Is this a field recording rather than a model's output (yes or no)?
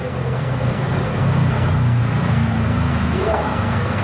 no